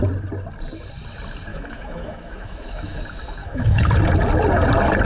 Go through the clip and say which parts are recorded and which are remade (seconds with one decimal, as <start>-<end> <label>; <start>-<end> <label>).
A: 0.0-1.5 recorded; 1.5-3.0 remade; 3.0-3.4 recorded; 3.4-3.9 remade; 3.9-5.0 recorded